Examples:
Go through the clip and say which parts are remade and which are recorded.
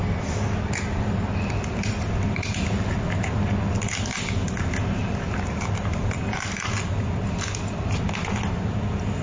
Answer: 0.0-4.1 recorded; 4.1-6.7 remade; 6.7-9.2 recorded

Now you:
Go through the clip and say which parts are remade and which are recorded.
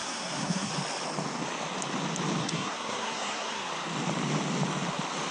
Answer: 0.0-0.7 remade; 0.7-2.4 recorded; 2.4-3.7 remade; 3.7-5.3 recorded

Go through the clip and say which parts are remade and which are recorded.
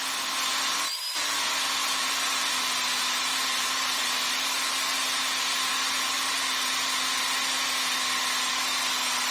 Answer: 0.0-1.8 recorded; 1.8-2.6 remade; 2.6-3.3 recorded; 3.3-4.0 remade; 4.0-9.3 recorded